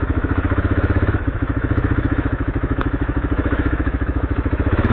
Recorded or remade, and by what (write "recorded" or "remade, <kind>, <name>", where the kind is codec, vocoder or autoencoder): remade, autoencoder, DAC-VAE